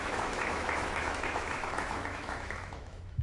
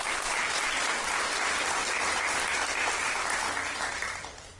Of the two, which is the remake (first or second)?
first